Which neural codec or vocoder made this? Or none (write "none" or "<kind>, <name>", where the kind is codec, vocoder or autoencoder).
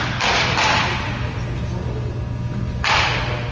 none